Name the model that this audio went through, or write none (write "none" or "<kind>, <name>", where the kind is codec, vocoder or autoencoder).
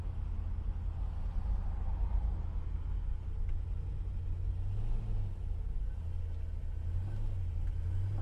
none